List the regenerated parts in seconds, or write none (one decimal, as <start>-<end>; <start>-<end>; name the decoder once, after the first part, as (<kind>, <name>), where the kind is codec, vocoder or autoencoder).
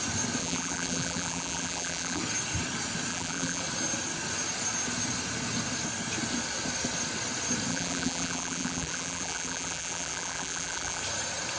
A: 0.4-2.2 (vocoder, BigVGAN v2); 3.1-3.6; 7.7-11.0